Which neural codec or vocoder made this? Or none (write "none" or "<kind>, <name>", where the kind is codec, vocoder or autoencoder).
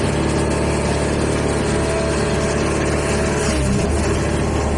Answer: none